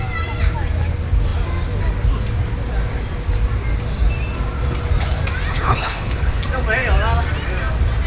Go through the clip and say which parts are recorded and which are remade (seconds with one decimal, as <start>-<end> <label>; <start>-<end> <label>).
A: 0.0-5.5 recorded; 5.5-6.4 remade; 6.4-8.1 recorded